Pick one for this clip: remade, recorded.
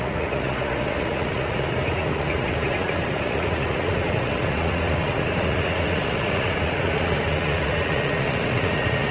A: remade